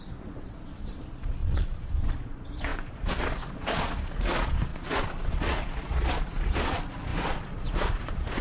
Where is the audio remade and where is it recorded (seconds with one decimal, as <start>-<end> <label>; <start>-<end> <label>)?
0.0-8.4 remade